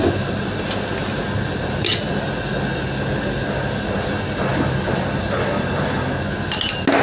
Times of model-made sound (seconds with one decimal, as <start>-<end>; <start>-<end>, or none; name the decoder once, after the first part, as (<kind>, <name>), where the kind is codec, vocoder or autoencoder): 4.5-5.1 (vocoder, BigVGAN v2)